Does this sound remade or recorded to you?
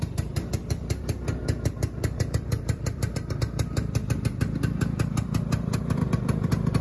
remade